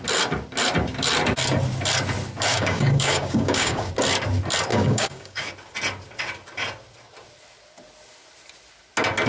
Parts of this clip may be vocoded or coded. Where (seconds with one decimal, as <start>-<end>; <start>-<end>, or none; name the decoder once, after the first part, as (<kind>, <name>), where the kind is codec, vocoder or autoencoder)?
2.5-3.9 (codec, DAC); 4.7-5.5